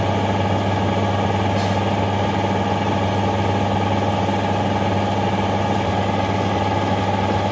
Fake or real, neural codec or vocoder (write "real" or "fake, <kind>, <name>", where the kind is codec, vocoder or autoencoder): real